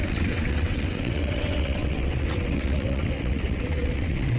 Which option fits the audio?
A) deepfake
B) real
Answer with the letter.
A